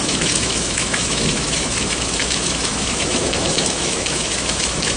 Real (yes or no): no